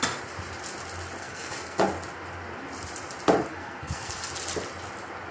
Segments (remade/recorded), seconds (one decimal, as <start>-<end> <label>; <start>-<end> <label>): 0.0-1.2 recorded; 1.2-1.8 remade; 1.8-3.5 recorded; 3.5-4.3 remade; 4.3-5.3 recorded

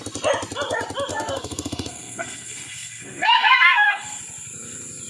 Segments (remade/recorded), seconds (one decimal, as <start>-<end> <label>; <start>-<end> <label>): 0.0-1.1 recorded; 1.1-4.2 remade; 4.2-5.1 recorded

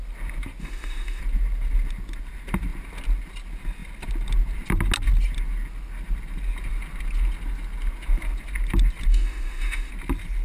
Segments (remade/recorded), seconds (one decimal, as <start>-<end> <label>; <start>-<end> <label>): 0.0-0.6 recorded; 0.6-1.2 remade; 1.2-9.1 recorded; 9.1-9.9 remade; 9.9-10.4 recorded

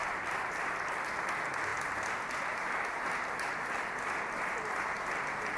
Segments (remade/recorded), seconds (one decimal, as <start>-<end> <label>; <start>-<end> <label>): 0.0-0.8 remade; 0.8-5.6 recorded

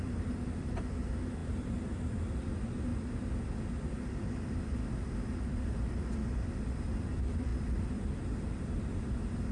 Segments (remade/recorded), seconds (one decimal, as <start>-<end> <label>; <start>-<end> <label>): 0.0-2.9 remade; 2.9-5.4 recorded; 5.4-9.5 remade

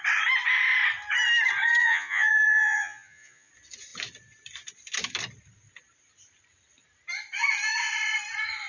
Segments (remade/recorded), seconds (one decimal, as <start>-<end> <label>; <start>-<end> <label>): 0.0-1.8 recorded; 1.8-3.5 remade; 3.5-8.7 recorded

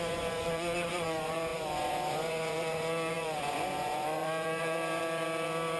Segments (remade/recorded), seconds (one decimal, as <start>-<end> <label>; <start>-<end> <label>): 0.0-5.8 remade